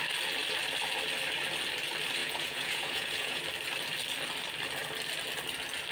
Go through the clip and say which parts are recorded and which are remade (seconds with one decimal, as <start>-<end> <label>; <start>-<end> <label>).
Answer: 0.0-2.2 recorded; 2.2-3.4 remade; 3.4-5.9 recorded